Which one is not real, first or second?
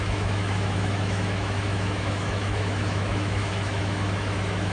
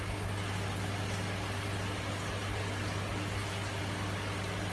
first